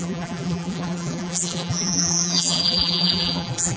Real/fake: fake